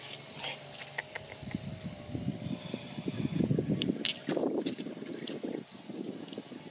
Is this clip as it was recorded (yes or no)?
yes